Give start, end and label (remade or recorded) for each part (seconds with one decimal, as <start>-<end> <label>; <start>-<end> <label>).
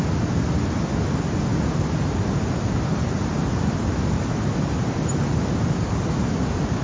0.0-1.5 recorded; 1.5-2.9 remade; 2.9-3.4 recorded; 3.4-6.0 remade; 6.0-6.8 recorded